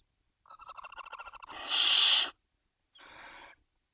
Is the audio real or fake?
real